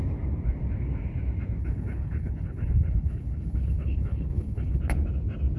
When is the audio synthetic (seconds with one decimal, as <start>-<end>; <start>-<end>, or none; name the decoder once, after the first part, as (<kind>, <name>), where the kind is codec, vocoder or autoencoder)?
1.6-4.8 (codec, HILCodec)